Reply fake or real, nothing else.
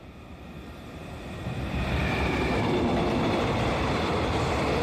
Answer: fake